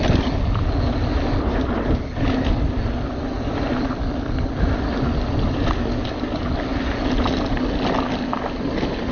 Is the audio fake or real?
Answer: real